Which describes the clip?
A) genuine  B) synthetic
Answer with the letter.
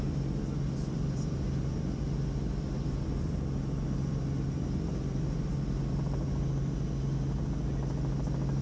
A